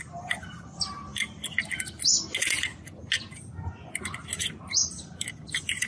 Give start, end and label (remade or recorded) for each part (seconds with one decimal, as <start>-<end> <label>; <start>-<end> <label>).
0.0-5.9 recorded